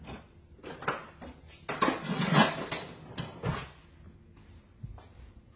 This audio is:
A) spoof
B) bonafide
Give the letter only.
B